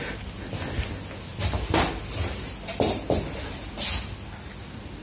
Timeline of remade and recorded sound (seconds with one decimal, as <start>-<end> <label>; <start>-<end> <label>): 0.0-5.0 recorded